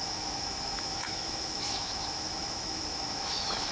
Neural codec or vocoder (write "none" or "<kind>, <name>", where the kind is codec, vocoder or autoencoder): autoencoder, DAC-VAE